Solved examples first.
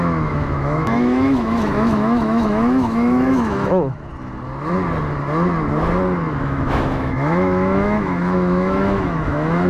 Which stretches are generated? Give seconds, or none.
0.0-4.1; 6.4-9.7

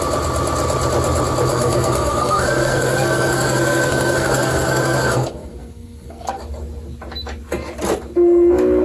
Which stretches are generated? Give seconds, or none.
1.5-6.4

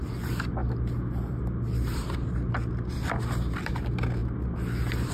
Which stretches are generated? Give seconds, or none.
none

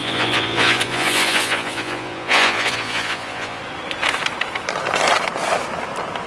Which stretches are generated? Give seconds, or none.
0.0-3.6

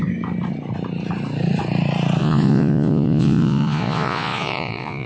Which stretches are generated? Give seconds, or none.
2.2-5.1

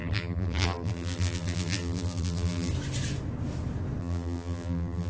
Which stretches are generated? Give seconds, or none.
0.0-2.7; 4.0-5.1